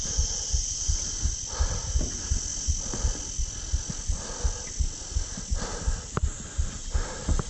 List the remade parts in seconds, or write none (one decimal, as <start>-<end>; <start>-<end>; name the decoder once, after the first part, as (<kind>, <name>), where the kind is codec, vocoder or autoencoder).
none